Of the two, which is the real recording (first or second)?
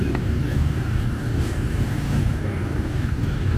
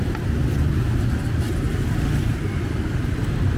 second